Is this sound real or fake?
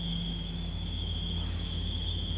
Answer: fake